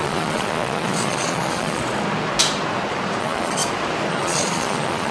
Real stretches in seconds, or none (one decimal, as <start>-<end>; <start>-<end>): 1.8-3.2; 3.6-4.1